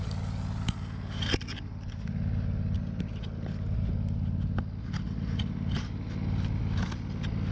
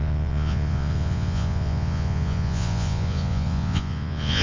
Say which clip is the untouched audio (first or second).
first